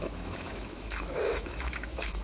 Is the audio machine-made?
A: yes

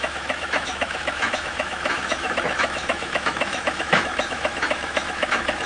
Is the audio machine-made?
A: yes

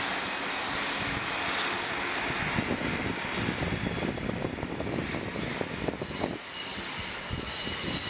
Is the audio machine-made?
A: no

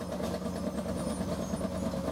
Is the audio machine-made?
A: no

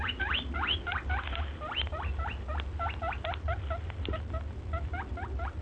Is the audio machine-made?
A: no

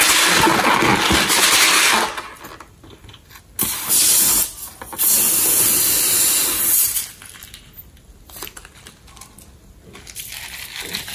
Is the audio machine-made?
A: no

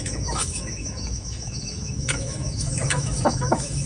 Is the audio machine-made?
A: yes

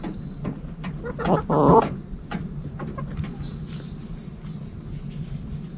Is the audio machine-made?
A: no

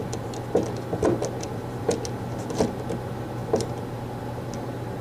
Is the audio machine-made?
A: no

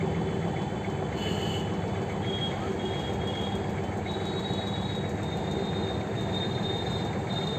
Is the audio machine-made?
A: no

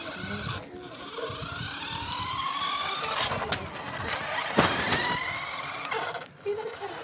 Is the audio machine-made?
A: no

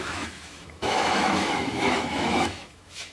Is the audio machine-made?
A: yes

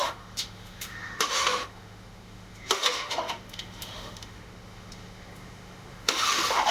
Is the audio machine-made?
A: yes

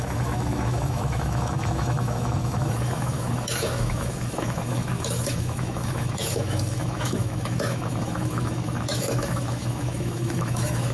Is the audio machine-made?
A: yes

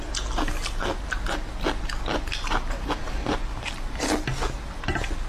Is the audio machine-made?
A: no